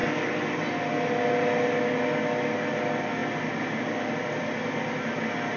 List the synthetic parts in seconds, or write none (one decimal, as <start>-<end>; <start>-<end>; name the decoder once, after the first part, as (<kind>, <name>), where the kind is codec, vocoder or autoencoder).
none